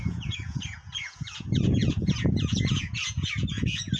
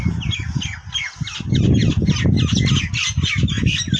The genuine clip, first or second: second